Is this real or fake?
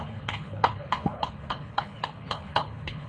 fake